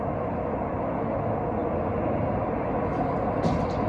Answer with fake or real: real